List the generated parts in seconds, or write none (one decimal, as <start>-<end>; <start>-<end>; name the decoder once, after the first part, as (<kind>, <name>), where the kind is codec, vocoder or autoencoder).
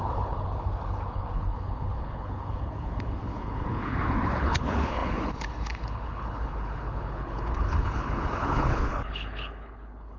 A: 0.0-10.2 (codec, HILCodec)